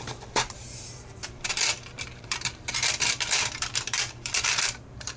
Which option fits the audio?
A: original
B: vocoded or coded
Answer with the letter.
B